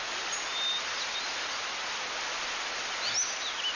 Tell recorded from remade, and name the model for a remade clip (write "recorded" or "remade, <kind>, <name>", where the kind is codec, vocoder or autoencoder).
recorded